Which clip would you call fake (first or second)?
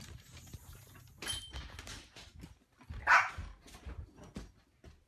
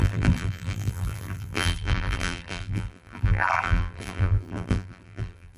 second